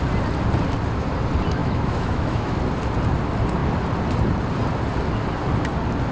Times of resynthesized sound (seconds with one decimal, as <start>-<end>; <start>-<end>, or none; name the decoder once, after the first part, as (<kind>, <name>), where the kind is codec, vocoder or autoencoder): 1.6-2.6 (autoencoder, DAC-VAE)

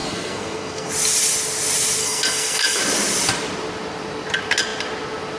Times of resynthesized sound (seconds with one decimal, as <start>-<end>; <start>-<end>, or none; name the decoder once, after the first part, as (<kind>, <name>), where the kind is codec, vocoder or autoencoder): 0.0-0.9 (codec, SNAC); 2.0-2.8